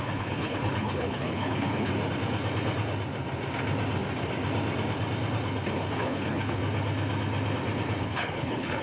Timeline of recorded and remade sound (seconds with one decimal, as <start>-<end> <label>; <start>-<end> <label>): 0.0-1.9 remade; 1.9-5.9 recorded; 5.9-6.6 remade; 6.6-8.0 recorded; 8.0-8.8 remade